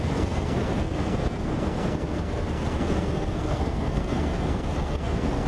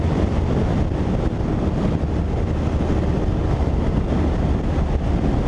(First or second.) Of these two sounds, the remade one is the first